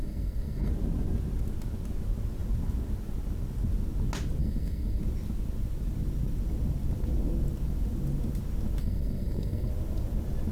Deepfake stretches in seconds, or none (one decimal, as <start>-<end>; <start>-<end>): 0.0-0.7; 4.4-5.0; 8.8-9.7